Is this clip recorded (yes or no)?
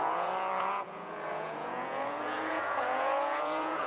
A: no